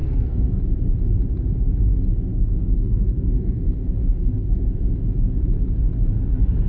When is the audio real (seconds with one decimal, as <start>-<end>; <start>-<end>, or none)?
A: 0.6-2.3; 4.7-6.7